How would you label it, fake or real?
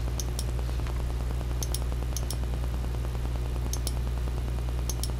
real